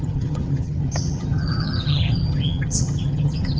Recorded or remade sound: remade